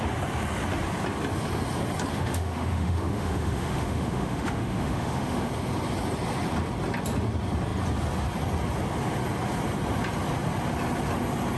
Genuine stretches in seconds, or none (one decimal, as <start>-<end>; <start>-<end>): 0.0-2.1; 5.5-11.6